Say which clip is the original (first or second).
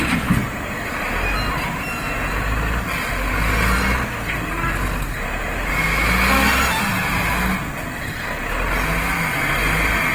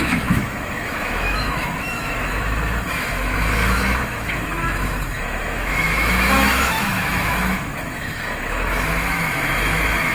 first